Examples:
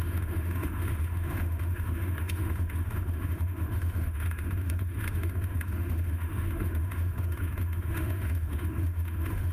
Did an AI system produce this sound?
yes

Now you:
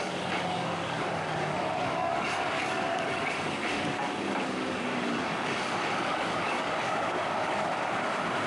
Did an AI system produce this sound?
yes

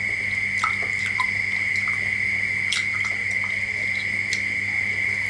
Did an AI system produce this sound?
no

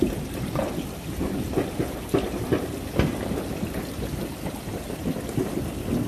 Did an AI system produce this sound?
no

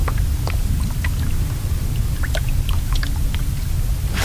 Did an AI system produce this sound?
no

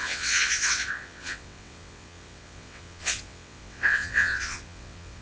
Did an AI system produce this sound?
yes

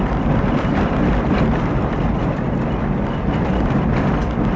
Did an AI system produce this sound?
no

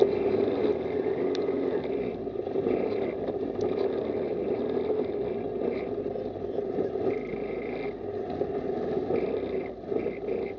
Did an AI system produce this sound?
no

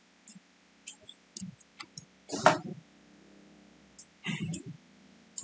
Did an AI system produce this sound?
no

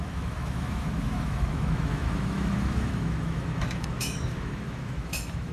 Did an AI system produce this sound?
yes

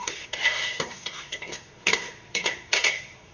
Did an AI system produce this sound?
yes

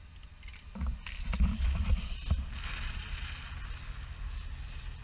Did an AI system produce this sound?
no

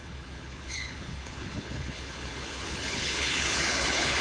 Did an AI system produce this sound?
yes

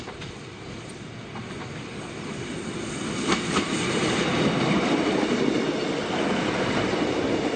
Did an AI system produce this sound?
no